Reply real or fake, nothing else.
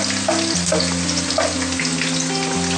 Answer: real